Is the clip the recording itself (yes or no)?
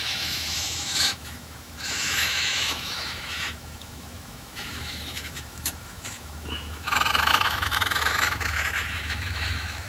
no